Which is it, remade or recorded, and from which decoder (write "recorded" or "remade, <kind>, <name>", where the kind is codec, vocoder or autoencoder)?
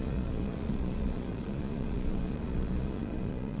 remade, vocoder, Vocos